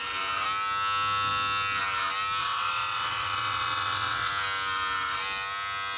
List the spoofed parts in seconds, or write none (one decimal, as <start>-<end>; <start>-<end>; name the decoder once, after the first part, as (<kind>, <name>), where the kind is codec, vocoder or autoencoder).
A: 2.4-4.3 (vocoder, WaveNeXt)